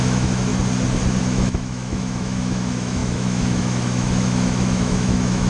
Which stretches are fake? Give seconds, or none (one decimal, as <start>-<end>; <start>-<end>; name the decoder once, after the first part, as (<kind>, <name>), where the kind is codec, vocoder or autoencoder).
0.0-0.5 (autoencoder, DAC-VAE); 1.2-5.5